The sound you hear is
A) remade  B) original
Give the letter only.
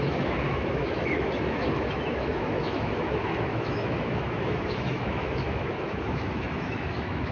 A